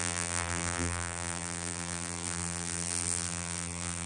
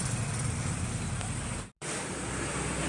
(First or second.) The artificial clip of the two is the first